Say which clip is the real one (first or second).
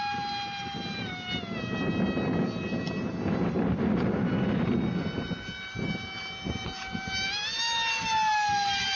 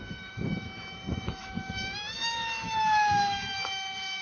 first